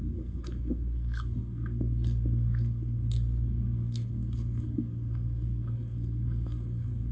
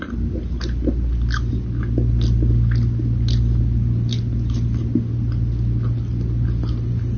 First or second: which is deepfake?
first